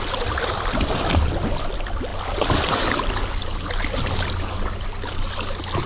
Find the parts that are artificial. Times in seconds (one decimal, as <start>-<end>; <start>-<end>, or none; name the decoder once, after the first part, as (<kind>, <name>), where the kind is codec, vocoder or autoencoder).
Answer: none